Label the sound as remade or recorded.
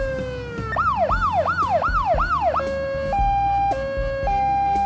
recorded